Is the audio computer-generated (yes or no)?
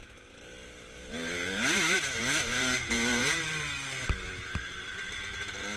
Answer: yes